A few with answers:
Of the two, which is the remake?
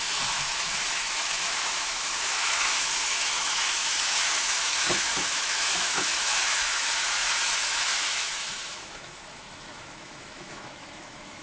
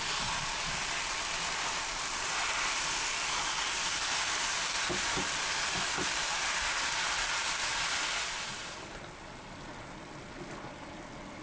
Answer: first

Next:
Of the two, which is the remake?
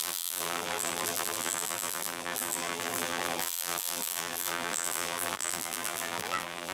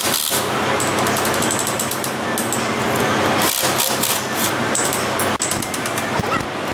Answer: first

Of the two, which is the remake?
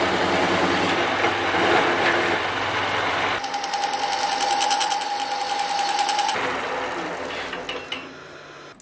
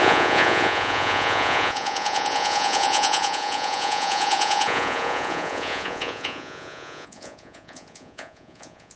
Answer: second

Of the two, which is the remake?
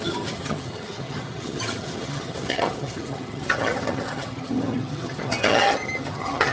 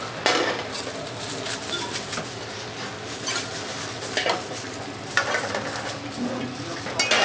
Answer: first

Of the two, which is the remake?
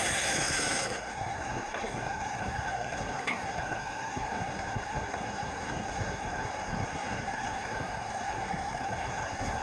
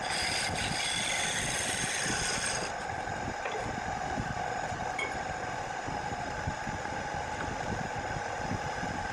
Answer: first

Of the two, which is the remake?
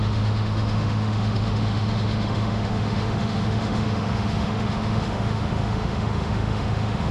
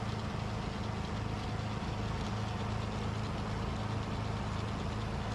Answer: first